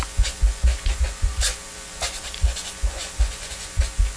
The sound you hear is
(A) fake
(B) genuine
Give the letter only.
A